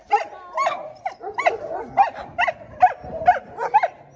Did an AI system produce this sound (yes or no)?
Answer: no